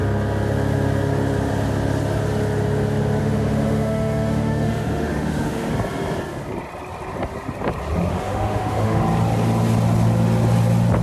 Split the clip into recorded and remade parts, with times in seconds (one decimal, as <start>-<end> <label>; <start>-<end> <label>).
0.0-3.2 recorded; 3.2-5.7 remade; 5.7-8.1 recorded; 8.1-9.0 remade; 9.0-11.0 recorded